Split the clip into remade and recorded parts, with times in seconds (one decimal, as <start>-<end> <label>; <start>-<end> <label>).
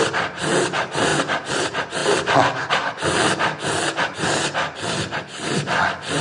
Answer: 0.0-6.2 recorded